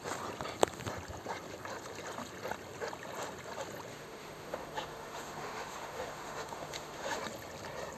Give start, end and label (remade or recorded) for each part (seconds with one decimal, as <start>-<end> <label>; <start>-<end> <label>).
0.0-3.9 recorded; 3.9-7.2 remade; 7.2-8.0 recorded